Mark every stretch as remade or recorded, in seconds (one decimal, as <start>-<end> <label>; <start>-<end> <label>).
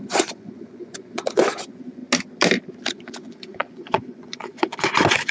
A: 0.0-2.0 remade; 2.0-2.9 recorded; 2.9-5.3 remade